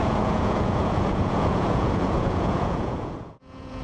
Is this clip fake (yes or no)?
yes